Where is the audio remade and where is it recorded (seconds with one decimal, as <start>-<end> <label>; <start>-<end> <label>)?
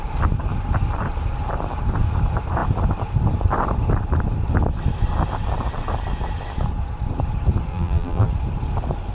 0.0-7.7 recorded; 7.7-8.3 remade; 8.3-9.1 recorded